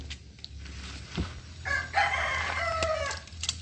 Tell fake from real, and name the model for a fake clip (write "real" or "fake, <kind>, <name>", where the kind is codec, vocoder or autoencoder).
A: real